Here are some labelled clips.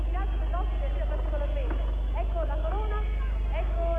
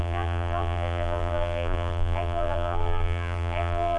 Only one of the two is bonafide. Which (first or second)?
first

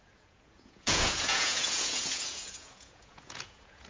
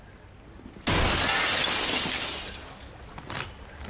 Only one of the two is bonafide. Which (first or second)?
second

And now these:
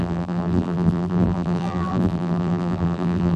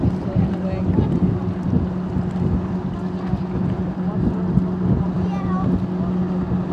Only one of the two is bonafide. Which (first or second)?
second